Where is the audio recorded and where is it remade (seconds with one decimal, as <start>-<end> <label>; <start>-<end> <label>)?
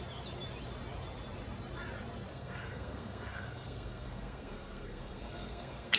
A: 0.0-2.3 recorded; 2.3-6.0 remade